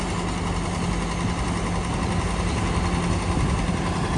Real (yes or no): yes